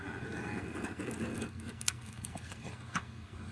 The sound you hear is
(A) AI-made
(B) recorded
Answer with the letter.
A